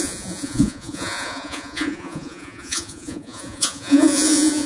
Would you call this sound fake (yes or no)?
yes